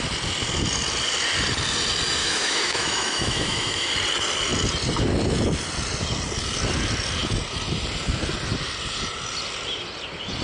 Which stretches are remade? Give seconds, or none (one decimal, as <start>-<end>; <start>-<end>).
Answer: 2.2-3.9